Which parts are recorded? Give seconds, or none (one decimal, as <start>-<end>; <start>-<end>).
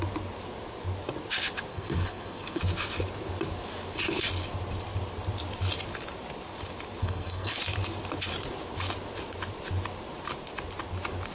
0.0-1.7; 2.6-7.0; 7.6-11.3